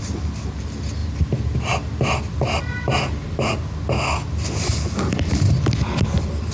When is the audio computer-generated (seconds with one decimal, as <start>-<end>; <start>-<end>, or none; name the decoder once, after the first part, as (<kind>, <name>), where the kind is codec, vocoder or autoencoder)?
none